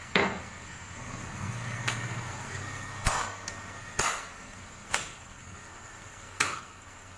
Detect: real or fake fake